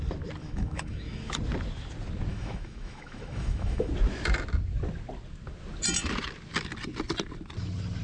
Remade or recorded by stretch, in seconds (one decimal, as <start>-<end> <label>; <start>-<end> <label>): 0.0-0.4 recorded; 0.4-1.3 remade; 1.3-2.3 recorded; 2.3-3.9 remade; 3.9-8.0 recorded